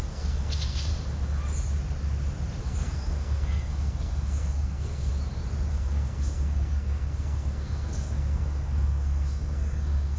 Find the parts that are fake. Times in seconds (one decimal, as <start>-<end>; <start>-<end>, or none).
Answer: 0.0-0.9; 2.6-5.1; 5.7-10.2